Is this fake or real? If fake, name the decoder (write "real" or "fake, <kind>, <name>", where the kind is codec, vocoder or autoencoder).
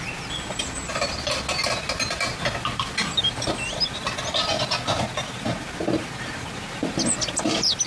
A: real